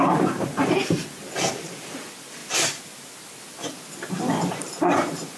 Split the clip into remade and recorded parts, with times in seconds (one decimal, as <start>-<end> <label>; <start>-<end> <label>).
0.0-1.0 remade; 1.0-1.6 recorded; 1.6-2.4 remade; 2.4-4.5 recorded; 4.5-5.4 remade